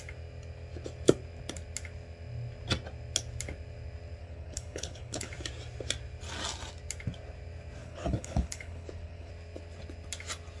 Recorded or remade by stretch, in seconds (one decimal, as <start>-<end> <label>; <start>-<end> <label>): 0.0-4.2 recorded; 4.2-5.3 remade; 5.3-7.8 recorded; 7.8-9.3 remade; 9.3-10.6 recorded